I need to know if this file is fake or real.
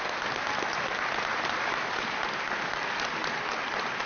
real